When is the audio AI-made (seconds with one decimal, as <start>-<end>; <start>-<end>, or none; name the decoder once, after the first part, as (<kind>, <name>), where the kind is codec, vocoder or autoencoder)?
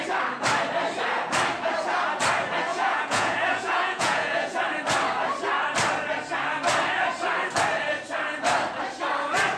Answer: 2.7-4.6 (vocoder, Vocos)